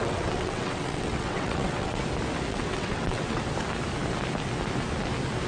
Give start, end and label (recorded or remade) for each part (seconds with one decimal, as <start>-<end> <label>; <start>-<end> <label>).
0.0-2.0 remade; 2.0-2.5 recorded; 2.5-3.4 remade; 3.4-5.5 recorded